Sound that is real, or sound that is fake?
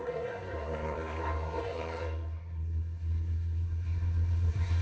fake